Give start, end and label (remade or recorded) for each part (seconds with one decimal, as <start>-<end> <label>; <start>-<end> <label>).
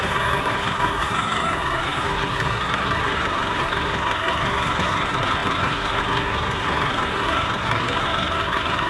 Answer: 0.0-8.9 remade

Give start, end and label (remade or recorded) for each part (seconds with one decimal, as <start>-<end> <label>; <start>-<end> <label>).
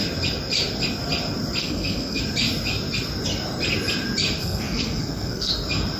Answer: 0.0-1.6 recorded; 1.6-2.2 remade; 2.2-4.4 recorded; 4.4-5.5 remade; 5.5-6.0 recorded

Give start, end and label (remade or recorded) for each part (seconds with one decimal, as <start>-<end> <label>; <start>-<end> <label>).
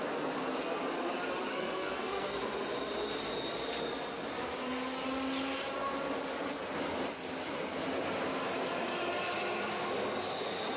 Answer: 0.0-1.5 recorded; 1.5-2.4 remade; 2.4-10.8 recorded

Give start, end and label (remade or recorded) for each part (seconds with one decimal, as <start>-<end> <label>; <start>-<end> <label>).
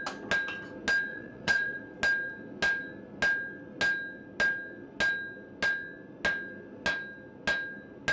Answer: 0.0-1.1 recorded; 1.1-1.8 remade; 1.8-8.1 recorded